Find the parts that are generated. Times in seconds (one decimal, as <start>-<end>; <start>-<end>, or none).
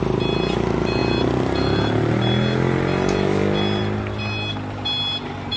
none